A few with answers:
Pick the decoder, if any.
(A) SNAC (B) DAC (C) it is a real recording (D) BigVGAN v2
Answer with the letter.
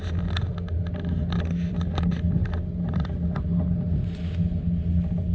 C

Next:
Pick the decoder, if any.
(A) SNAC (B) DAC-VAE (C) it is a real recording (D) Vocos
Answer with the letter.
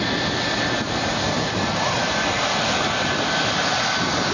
C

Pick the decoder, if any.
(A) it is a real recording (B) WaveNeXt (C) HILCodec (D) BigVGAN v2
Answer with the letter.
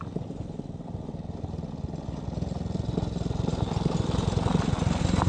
A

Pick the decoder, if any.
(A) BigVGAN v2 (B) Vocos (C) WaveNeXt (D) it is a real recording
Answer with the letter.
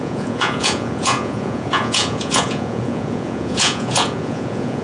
B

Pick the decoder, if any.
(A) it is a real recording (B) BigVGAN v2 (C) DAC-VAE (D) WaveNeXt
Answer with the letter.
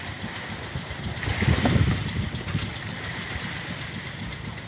A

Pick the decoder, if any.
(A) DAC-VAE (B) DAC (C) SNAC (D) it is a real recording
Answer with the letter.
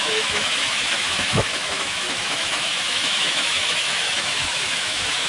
A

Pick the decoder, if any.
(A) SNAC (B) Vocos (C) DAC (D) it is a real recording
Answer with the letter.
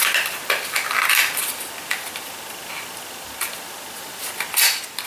D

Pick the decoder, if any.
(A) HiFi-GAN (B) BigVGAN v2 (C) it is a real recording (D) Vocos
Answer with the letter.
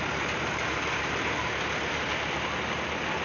C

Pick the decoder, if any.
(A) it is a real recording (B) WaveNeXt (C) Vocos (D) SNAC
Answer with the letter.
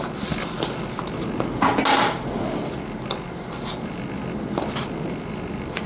A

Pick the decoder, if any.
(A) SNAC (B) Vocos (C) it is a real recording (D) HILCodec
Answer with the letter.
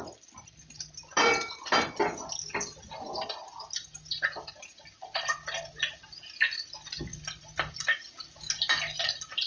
C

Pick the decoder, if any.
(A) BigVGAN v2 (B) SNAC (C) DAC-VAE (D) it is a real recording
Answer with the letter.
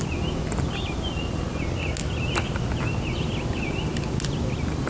D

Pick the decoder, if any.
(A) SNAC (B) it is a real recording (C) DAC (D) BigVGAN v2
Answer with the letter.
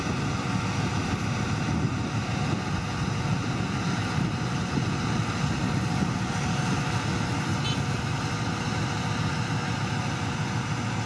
B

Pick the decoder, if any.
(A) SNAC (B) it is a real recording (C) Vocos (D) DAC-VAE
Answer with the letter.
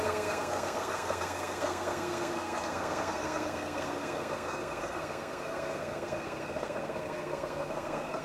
A